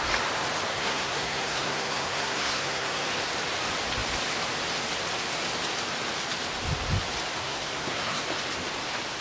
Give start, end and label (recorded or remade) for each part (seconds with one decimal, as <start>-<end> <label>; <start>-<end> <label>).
0.0-0.7 recorded; 0.7-3.1 remade; 3.1-7.4 recorded; 7.4-8.2 remade; 8.2-9.2 recorded